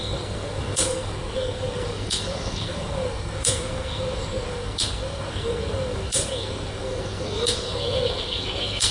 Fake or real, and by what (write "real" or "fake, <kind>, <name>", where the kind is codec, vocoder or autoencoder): fake, codec, SNAC